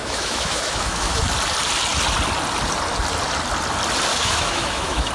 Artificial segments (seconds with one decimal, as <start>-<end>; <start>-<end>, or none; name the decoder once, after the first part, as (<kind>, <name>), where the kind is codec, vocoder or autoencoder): 0.0-1.2 (autoencoder, DAC-VAE); 4.1-5.1